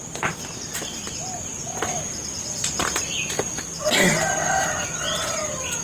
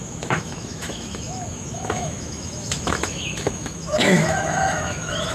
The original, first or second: first